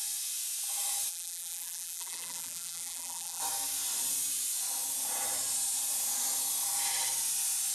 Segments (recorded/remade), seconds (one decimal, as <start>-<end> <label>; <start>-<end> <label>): 0.0-1.1 recorded; 1.1-3.4 remade; 3.4-7.7 recorded